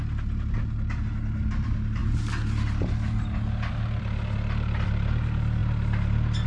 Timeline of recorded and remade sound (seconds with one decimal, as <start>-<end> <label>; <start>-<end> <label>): 0.0-6.5 recorded